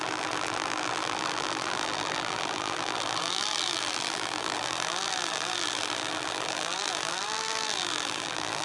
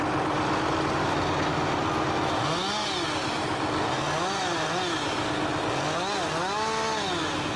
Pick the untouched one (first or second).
second